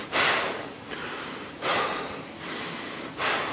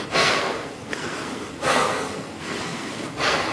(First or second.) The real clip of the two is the first